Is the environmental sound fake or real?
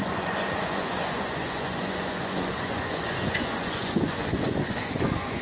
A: fake